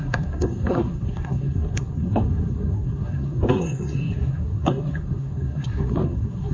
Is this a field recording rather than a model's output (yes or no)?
no